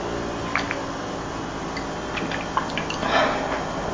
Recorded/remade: recorded